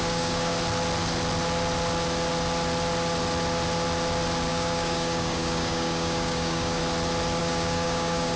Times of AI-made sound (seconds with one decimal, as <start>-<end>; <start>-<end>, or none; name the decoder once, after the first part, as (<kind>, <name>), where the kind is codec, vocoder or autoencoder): 0.0-0.5 (codec, DAC); 4.5-6.8; 7.4-8.4